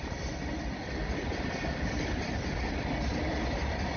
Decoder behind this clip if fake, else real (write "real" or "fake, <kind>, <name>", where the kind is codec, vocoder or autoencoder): real